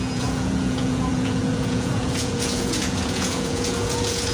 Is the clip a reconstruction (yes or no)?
yes